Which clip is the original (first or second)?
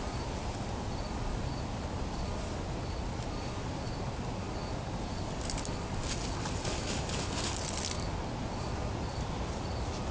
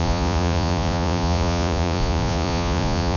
first